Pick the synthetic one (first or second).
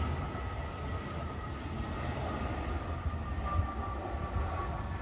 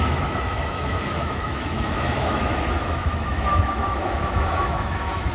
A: second